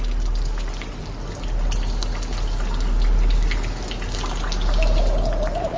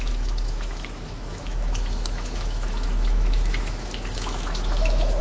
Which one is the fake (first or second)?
second